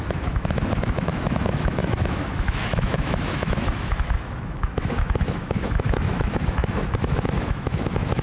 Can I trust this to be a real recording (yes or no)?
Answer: no